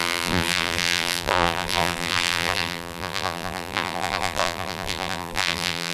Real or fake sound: fake